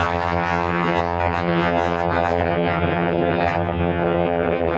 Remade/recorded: remade